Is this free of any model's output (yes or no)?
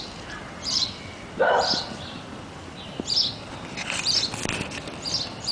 yes